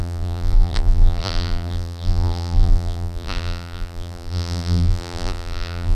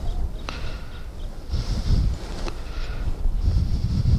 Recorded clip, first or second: second